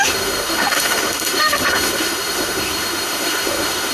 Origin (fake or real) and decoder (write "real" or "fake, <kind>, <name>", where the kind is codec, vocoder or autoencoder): fake, autoencoder, DAC-VAE